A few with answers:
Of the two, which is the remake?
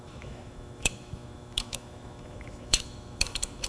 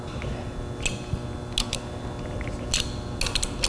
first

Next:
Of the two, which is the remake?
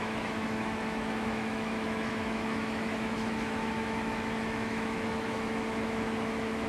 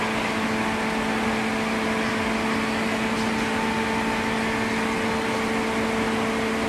first